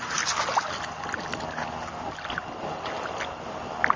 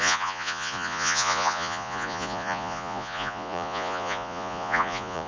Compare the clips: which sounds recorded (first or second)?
first